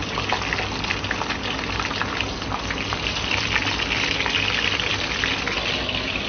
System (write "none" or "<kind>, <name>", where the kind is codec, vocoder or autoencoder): none